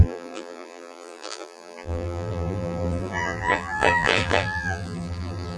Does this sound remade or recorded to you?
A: remade